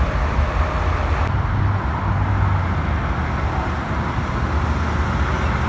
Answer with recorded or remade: recorded